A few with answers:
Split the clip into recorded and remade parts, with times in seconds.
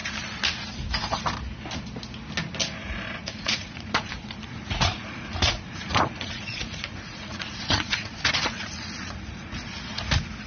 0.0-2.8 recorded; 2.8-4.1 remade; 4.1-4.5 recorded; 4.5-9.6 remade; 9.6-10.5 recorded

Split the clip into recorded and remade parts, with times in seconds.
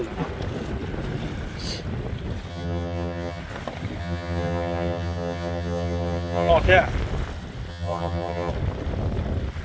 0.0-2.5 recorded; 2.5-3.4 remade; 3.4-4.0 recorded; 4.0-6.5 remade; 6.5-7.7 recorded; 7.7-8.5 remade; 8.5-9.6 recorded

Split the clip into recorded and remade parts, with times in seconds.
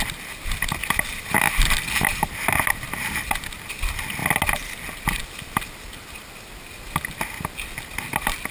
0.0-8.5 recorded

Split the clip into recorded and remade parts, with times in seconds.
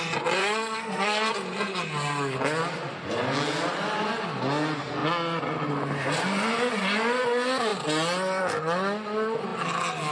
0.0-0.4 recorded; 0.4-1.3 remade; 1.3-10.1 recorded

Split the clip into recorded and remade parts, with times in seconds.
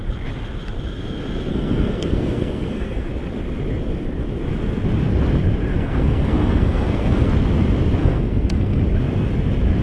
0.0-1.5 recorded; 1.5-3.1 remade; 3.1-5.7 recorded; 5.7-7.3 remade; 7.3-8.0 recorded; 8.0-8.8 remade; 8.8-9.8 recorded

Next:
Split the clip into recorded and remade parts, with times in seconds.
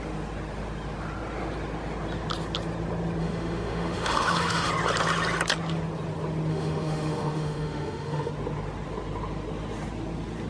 0.0-3.2 recorded; 3.2-4.7 remade; 4.7-6.5 recorded; 6.5-8.3 remade; 8.3-10.5 recorded